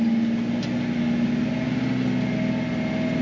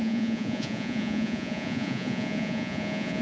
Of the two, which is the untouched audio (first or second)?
first